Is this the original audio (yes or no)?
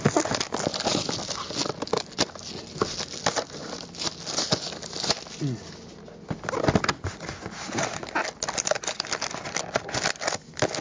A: yes